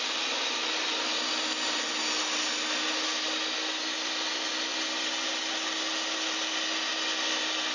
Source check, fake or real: real